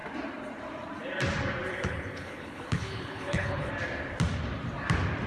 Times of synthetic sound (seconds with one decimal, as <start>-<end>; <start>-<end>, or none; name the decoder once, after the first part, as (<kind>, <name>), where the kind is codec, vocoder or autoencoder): 1.7-3.7 (codec, HILCodec)

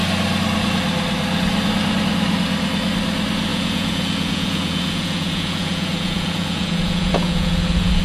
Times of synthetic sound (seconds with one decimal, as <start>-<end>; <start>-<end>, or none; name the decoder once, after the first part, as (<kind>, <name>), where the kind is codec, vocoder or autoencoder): 3.5-8.0 (vocoder, Vocos)

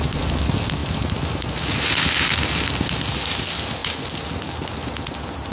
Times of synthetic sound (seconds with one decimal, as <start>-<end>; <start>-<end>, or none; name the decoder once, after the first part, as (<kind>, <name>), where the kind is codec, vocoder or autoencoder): none

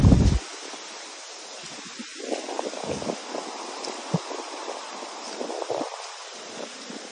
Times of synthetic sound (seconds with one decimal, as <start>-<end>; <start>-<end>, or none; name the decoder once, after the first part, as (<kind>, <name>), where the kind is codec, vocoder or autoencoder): none

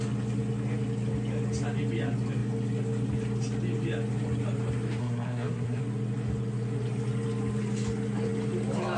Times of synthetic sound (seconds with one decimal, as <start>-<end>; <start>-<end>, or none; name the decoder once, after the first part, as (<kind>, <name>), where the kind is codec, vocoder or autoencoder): 5.0-5.8 (codec, SNAC)

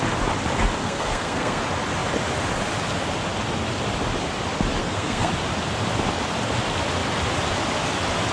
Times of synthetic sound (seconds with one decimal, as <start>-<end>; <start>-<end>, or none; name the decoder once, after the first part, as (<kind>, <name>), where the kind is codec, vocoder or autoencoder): 0.8-1.6 (codec, SNAC); 4.8-5.3